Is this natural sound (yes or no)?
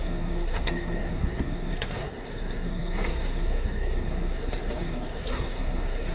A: no